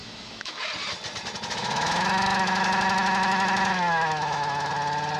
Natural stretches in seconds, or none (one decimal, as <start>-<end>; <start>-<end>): 0.6-1.6; 4.7-5.2